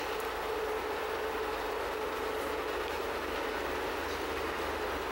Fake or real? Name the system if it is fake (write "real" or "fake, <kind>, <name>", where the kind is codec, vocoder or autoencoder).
real